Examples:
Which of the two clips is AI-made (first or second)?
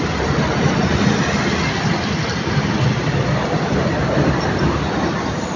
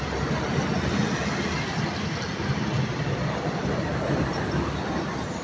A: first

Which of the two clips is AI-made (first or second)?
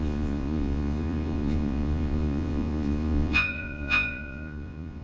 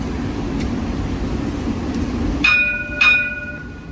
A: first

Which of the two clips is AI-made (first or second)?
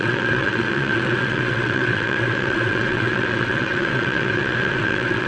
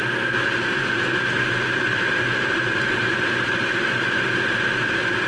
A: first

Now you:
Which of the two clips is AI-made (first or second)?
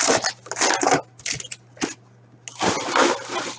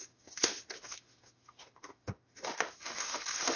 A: second